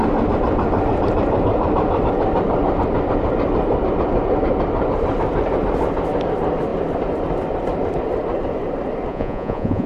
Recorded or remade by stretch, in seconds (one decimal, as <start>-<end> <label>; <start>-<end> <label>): 0.0-9.1 recorded; 9.1-9.9 remade